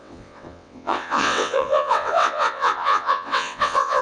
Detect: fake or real fake